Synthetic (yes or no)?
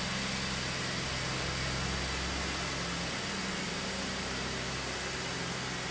no